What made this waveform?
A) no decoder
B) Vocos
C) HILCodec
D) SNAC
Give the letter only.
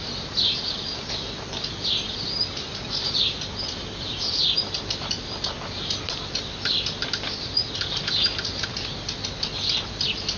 A